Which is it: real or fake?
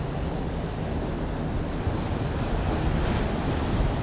real